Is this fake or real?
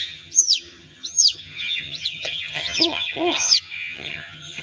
fake